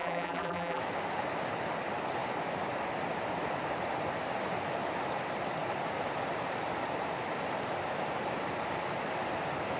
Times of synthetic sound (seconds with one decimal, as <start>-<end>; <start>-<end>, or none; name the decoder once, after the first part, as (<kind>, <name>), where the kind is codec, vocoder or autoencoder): 0.0-0.8 (vocoder, BigVGAN v2)